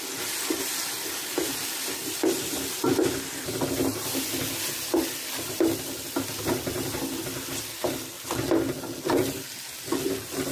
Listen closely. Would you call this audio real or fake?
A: real